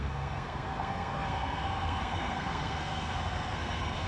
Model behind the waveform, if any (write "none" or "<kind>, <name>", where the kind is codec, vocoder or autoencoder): codec, SNAC